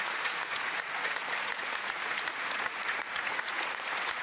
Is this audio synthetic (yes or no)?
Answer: yes